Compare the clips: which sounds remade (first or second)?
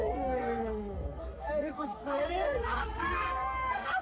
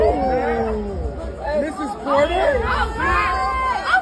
first